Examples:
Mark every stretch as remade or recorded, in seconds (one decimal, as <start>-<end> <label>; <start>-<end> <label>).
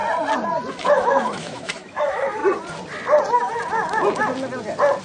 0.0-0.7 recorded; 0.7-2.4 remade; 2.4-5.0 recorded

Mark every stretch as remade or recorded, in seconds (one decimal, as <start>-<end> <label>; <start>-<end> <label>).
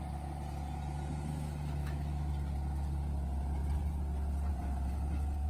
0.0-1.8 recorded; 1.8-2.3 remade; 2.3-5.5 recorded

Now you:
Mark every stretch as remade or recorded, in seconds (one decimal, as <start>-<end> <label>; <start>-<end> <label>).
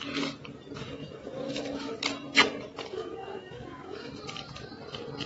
0.0-0.9 recorded; 0.9-1.9 remade; 1.9-2.9 recorded; 2.9-4.1 remade; 4.1-5.3 recorded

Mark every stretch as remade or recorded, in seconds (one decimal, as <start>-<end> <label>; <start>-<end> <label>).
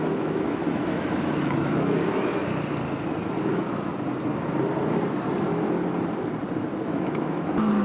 0.0-2.4 remade; 2.4-3.4 recorded; 3.4-3.9 remade; 3.9-6.8 recorded; 6.8-7.8 remade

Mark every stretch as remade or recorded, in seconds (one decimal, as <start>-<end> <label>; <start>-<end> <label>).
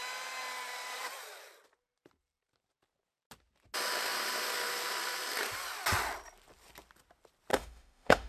0.0-7.5 recorded; 7.5-8.3 remade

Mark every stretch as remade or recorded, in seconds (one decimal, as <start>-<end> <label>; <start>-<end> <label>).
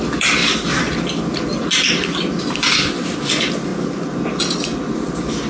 0.0-5.5 recorded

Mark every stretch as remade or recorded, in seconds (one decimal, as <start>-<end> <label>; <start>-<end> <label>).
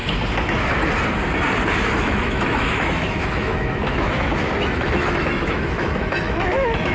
0.0-1.9 recorded; 1.9-6.9 remade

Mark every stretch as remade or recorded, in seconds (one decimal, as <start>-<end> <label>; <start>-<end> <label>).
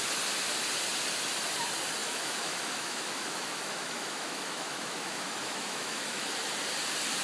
0.0-2.0 recorded; 2.0-6.3 remade; 6.3-7.2 recorded